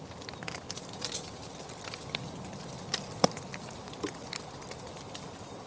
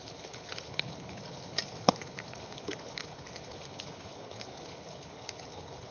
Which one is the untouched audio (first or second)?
first